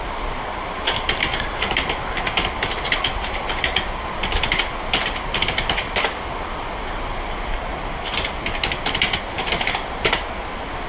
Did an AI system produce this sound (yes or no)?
no